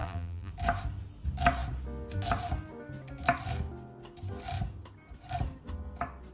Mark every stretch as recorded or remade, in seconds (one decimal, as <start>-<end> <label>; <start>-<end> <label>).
0.0-0.5 remade; 0.5-6.3 recorded

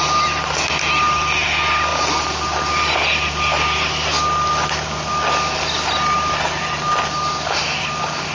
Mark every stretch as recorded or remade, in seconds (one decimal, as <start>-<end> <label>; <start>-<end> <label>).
0.0-8.3 recorded

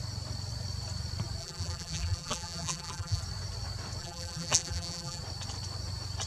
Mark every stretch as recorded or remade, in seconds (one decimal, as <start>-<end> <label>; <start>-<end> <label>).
0.0-1.4 recorded; 1.4-3.2 remade; 3.2-4.0 recorded; 4.0-5.2 remade; 5.2-6.3 recorded

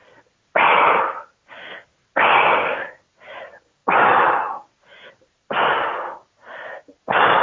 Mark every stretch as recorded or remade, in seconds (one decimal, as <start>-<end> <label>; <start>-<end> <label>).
0.0-7.4 recorded

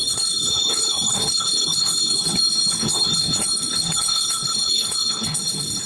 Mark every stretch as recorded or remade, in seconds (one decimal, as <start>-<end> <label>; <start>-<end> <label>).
0.0-5.9 remade

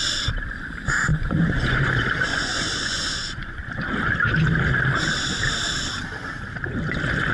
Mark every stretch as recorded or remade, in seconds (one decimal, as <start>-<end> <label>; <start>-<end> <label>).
0.0-1.1 recorded; 1.1-1.9 remade; 1.9-2.3 recorded; 2.3-3.7 remade; 3.7-7.3 recorded